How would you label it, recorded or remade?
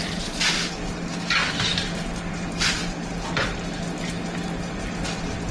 recorded